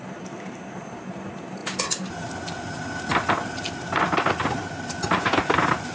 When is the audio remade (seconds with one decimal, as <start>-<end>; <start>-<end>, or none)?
none